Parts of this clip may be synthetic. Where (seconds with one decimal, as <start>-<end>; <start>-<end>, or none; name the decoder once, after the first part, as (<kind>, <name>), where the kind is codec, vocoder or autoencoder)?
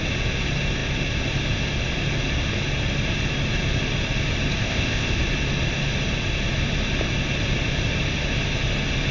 4.6-5.2 (codec, ZipCodec)